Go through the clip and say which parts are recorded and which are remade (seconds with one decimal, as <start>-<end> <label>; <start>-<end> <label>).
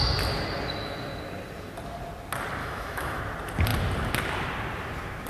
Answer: 0.0-2.6 recorded; 2.6-3.2 remade; 3.2-5.3 recorded